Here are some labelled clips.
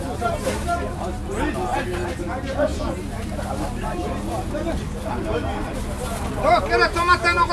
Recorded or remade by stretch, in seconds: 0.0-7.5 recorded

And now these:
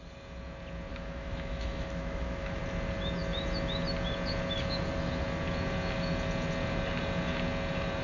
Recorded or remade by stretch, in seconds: 0.0-0.9 recorded; 0.9-2.6 remade; 2.6-8.0 recorded